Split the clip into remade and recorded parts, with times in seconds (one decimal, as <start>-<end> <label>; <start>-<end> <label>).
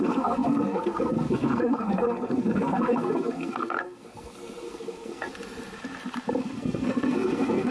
0.0-5.3 remade; 5.3-6.4 recorded; 6.4-7.7 remade